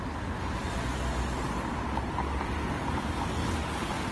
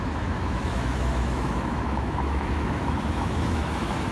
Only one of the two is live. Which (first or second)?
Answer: first